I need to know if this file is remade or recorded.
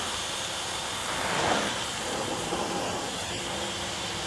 recorded